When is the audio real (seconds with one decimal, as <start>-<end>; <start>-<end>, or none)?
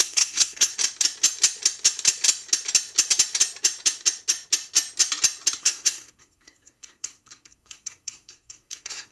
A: 0.7-5.6